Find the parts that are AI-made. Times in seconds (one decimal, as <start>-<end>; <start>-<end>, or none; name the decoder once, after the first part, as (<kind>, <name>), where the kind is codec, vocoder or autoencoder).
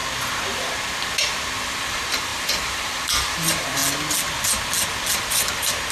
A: 1.8-3.8 (vocoder, BigVGAN v2); 5.2-5.9